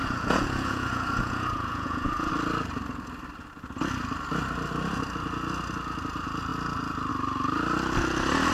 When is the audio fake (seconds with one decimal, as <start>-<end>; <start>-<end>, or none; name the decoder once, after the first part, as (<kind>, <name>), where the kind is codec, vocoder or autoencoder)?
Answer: 0.0-2.3 (vocoder, Vocos)